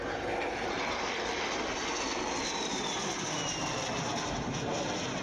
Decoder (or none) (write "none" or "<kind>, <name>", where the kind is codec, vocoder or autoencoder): vocoder, BigVGAN v2